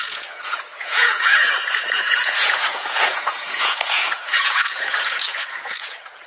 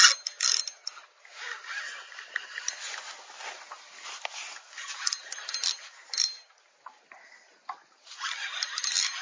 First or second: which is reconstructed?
first